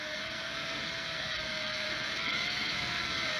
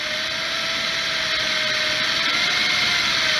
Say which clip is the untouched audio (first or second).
second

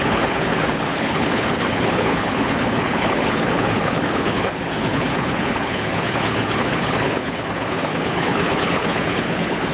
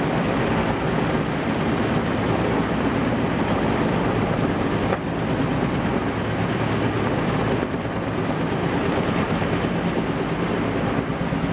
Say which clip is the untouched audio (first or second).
second